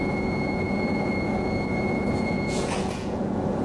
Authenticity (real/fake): fake